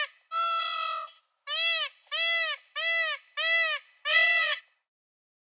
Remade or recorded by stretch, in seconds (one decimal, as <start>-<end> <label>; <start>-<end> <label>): 0.0-0.6 recorded; 0.6-1.2 remade; 1.2-4.1 recorded; 4.1-4.6 remade; 4.6-5.5 recorded